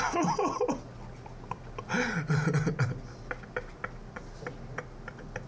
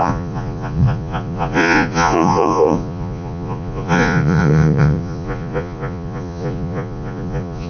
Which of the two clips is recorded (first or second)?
first